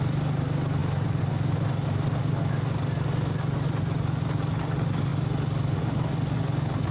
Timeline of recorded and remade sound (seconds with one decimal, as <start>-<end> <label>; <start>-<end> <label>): 0.0-6.9 recorded